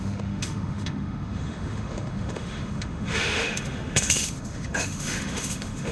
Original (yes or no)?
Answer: no